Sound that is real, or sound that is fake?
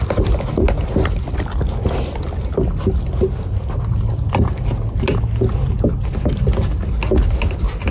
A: real